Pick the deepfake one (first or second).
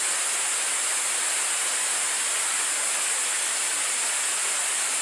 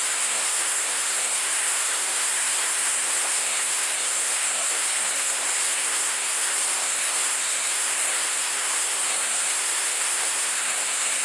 second